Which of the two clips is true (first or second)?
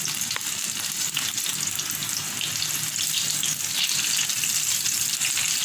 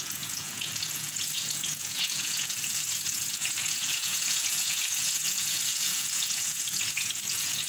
first